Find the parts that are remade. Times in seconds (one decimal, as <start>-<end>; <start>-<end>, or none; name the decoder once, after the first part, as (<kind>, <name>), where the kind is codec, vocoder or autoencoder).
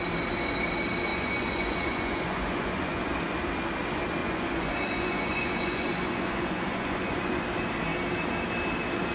1.1-3.1 (vocoder, Vocos); 4.2-7.4